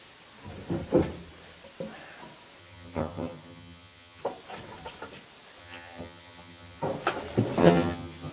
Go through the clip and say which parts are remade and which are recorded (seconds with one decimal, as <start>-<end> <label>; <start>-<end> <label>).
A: 0.0-2.6 recorded; 2.6-4.2 remade; 4.2-5.6 recorded; 5.6-6.8 remade; 6.8-7.6 recorded; 7.6-8.3 remade